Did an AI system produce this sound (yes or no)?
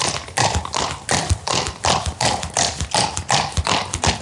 no